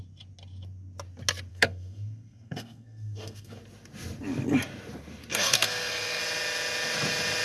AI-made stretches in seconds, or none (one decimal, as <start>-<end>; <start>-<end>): 1.5-3.6; 5.3-6.2